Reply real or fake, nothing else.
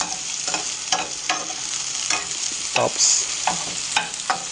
real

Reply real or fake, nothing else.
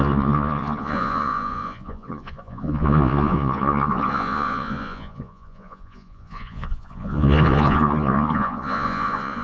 fake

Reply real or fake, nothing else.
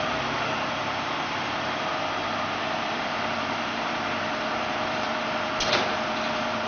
fake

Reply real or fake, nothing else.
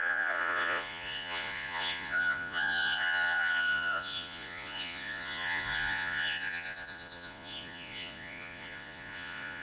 fake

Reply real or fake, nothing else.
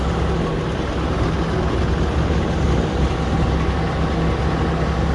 real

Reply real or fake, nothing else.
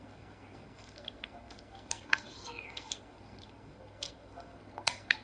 fake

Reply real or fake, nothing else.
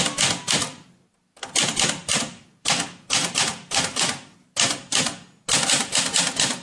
real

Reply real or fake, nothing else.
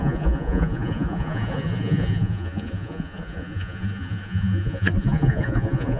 fake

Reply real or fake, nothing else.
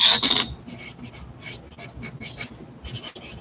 real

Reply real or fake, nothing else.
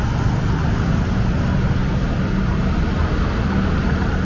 real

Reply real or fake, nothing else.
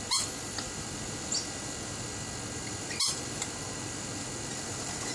real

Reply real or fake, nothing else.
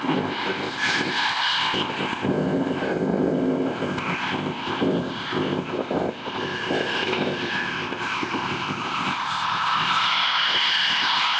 fake